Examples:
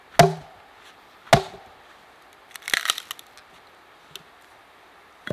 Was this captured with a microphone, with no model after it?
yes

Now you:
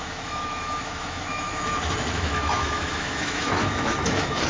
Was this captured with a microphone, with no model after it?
no